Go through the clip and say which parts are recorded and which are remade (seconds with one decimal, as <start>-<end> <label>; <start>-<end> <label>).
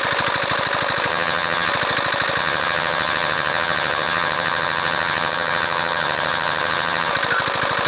0.0-1.1 recorded; 1.1-1.7 remade; 1.7-2.4 recorded; 2.4-7.1 remade; 7.1-7.9 recorded